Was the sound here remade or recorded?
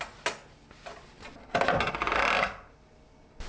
recorded